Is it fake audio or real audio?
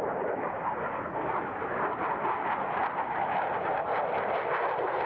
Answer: real